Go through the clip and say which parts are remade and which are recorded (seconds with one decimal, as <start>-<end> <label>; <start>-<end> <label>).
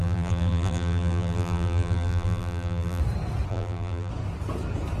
0.0-3.0 remade; 3.0-3.5 recorded; 3.5-4.1 remade; 4.1-5.0 recorded